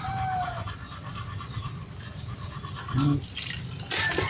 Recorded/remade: recorded